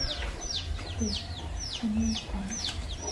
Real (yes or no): no